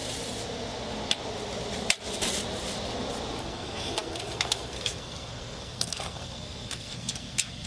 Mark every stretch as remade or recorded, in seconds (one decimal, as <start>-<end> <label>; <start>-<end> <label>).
0.0-3.4 recorded; 3.4-7.7 remade